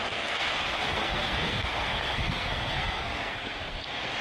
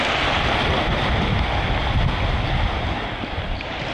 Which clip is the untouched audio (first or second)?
second